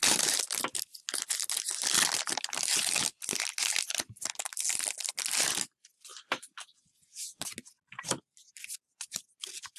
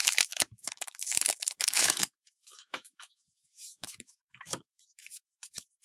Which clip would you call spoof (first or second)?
second